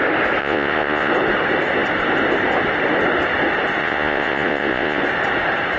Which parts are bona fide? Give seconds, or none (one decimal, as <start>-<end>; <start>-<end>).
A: 0.0-0.4; 1.1-3.8; 5.0-5.8

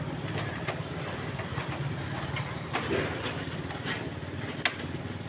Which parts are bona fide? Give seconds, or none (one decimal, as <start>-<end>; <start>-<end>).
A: 0.0-5.3

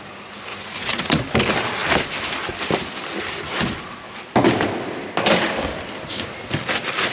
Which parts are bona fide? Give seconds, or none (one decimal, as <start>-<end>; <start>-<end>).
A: 0.0-0.5; 1.2-7.1